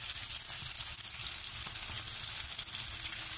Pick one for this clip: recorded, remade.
recorded